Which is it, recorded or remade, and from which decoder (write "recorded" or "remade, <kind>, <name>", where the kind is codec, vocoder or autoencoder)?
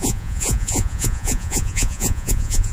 remade, vocoder, Vocos